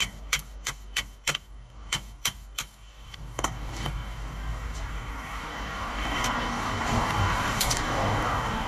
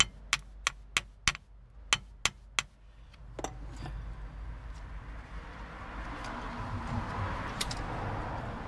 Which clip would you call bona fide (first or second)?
second